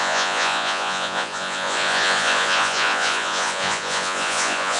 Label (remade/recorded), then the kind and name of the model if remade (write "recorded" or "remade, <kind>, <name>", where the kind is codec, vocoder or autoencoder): remade, vocoder, Vocos